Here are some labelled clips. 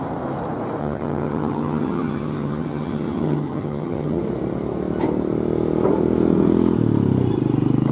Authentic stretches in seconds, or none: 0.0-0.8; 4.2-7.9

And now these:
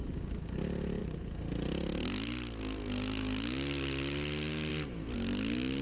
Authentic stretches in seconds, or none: 0.0-5.8

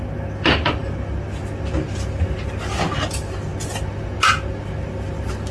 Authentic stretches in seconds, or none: 0.0-5.5

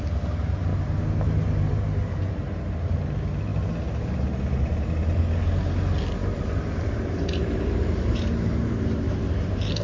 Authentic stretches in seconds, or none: 0.0-6.2; 9.2-9.8